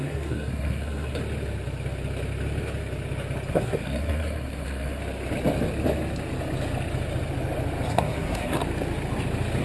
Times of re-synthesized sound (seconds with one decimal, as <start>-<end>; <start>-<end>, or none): 0.0-1.2; 3.5-5.0; 7.9-8.6